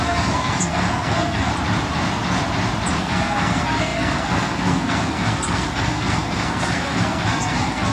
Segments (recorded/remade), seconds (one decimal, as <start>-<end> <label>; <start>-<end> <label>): 0.0-1.5 remade; 1.5-3.0 recorded; 3.0-7.9 remade